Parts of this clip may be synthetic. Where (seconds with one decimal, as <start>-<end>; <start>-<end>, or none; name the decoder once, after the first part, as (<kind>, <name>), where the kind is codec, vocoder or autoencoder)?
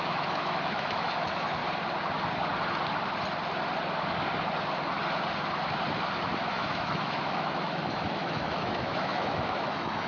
0.0-1.6 (autoencoder, DAC-VAE); 6.5-10.1